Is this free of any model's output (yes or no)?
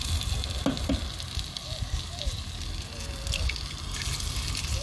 yes